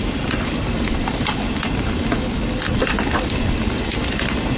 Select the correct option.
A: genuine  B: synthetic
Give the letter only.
A